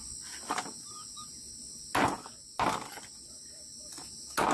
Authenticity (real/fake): real